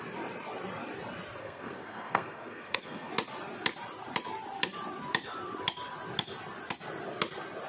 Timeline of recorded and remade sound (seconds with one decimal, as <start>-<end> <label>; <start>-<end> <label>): 0.0-1.4 recorded; 1.4-3.1 remade; 3.1-7.7 recorded